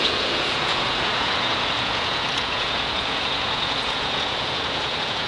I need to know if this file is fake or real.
fake